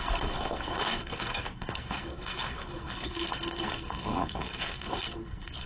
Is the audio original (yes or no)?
no